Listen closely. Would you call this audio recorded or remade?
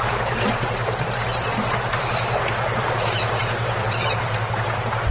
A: remade